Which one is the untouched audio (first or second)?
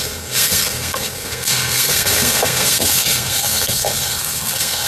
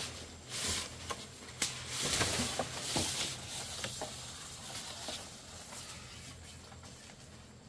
second